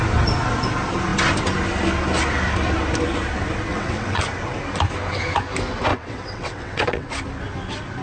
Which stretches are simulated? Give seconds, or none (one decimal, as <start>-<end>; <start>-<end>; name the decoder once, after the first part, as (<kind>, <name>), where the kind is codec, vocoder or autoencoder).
3.7-4.2 (vocoder, WaveNeXt); 5.9-7.1